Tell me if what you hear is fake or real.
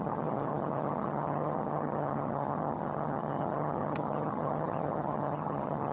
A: fake